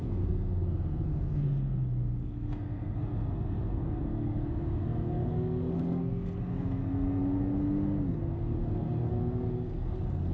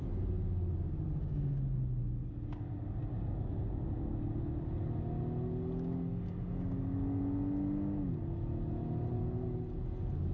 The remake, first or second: first